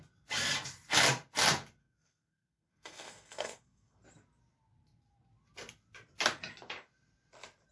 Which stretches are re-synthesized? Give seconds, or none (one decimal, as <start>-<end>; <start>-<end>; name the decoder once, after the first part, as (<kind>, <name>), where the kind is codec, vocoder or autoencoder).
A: 1.8-4.0 (codec, SNAC)